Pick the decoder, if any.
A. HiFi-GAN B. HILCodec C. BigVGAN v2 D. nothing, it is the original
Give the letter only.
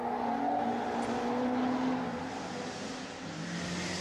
D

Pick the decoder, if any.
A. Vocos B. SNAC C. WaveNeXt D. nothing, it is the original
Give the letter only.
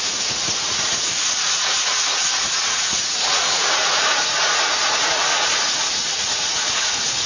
A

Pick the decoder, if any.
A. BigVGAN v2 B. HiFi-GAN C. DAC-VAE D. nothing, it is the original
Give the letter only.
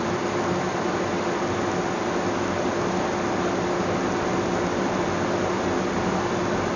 D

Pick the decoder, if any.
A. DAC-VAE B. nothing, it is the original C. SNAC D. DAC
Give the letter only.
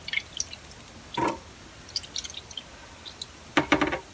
B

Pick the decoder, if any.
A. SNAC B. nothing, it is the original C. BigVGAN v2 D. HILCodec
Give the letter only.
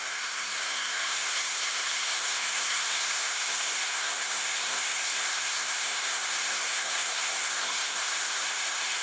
A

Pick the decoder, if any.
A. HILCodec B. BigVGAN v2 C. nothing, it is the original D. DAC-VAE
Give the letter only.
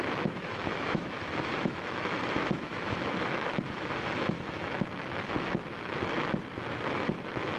D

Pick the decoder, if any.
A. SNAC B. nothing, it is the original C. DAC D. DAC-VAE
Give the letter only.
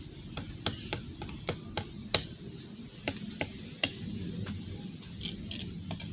B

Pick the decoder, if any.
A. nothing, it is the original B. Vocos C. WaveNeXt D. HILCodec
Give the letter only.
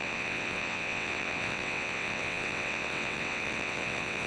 C